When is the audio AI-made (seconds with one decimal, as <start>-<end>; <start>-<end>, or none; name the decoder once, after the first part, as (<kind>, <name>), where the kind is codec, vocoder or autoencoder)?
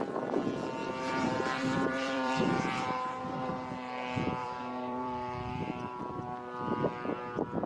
0.8-3.5 (vocoder, BigVGAN v2); 4.4-6.0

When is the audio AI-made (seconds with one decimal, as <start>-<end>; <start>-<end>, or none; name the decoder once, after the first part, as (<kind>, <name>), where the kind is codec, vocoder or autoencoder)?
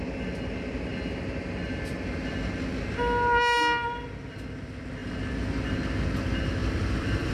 6.6-7.3 (vocoder, BigVGAN v2)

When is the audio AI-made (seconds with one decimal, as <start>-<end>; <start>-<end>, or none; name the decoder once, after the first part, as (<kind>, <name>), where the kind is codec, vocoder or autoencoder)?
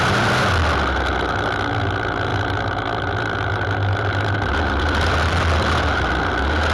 2.3-6.3 (vocoder, BigVGAN v2)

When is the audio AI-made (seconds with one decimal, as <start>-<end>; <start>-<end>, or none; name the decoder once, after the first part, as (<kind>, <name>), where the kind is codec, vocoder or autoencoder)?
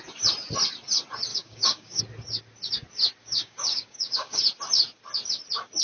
1.3-2.0 (codec, DAC); 3.2-4.4